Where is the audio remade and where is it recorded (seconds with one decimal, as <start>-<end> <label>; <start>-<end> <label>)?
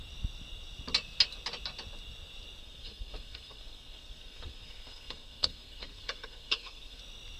0.0-2.6 recorded; 2.6-7.0 remade; 7.0-7.4 recorded